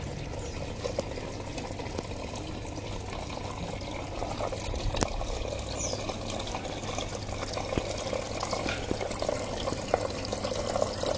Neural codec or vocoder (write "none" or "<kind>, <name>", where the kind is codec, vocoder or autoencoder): none